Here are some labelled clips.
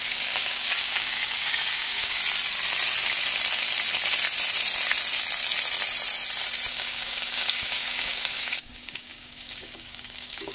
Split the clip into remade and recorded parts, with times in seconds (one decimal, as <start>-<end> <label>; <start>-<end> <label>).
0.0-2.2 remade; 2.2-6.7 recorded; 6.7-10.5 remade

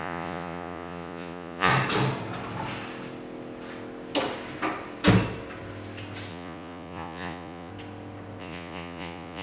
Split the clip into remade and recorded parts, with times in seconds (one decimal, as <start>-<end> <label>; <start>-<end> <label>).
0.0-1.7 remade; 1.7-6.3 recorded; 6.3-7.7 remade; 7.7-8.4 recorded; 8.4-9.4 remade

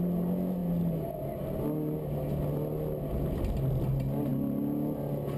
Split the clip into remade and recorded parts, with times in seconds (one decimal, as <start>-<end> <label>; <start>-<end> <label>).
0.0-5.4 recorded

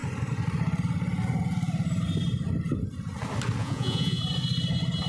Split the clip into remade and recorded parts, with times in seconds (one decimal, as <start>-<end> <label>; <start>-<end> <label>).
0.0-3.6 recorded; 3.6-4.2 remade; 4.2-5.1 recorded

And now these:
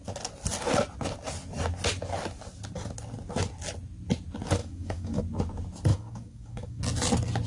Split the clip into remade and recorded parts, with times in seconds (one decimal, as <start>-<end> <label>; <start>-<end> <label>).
0.0-4.6 recorded; 4.6-5.2 remade; 5.2-5.9 recorded; 5.9-6.8 remade; 6.8-7.5 recorded

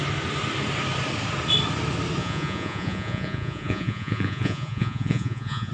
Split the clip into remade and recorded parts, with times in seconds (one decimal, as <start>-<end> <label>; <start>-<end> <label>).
0.0-2.2 recorded; 2.2-5.7 remade